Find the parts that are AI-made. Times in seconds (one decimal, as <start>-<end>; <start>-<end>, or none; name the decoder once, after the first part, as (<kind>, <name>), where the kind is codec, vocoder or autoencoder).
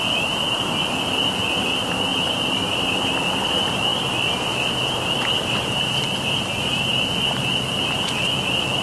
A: 2.1-2.9 (vocoder, BigVGAN v2)